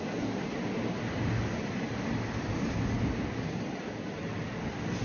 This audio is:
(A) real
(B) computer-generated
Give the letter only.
A